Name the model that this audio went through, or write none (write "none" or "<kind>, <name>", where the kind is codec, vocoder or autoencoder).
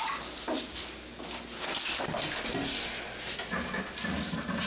none